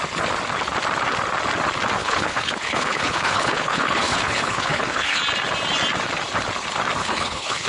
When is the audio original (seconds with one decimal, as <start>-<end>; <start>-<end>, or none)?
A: 0.0-2.0; 5.2-7.0